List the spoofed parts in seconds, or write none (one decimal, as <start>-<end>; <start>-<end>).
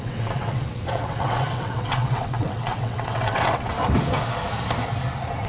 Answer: 0.0-3.8